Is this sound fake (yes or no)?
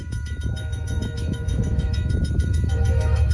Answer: yes